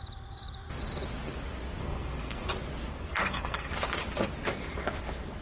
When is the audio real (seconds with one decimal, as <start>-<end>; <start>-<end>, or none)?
0.0-1.8; 2.5-2.9; 3.7-5.4